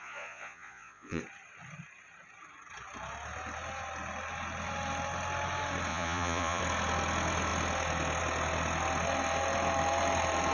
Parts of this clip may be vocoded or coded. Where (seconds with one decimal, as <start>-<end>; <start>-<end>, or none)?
0.0-1.2; 5.9-6.6